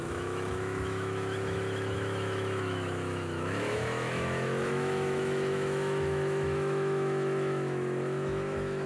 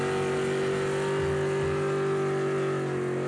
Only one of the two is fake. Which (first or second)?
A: first